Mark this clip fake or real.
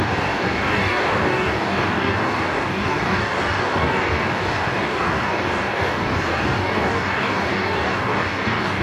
fake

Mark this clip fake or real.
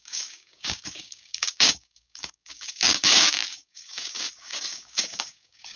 fake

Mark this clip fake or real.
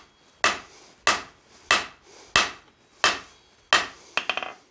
real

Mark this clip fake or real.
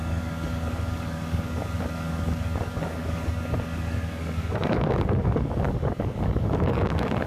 fake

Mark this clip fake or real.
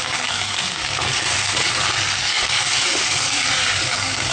fake